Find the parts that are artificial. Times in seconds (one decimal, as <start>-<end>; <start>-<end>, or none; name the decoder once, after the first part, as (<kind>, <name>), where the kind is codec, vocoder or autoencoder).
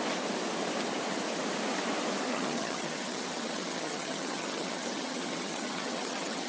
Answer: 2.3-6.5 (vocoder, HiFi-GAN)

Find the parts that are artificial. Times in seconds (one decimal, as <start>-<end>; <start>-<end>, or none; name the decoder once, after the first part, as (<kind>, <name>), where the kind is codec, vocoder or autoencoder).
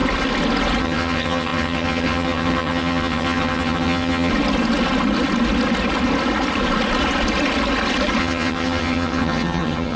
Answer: 0.8-4.3 (vocoder, HiFi-GAN); 8.2-10.0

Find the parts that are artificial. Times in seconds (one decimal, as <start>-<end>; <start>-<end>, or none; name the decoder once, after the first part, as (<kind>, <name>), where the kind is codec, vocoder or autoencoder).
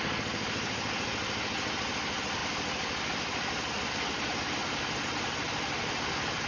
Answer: none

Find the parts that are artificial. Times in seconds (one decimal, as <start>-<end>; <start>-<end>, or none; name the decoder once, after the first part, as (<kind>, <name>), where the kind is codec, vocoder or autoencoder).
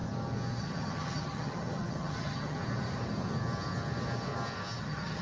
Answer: 0.6-2.6 (vocoder, HiFi-GAN); 4.8-5.2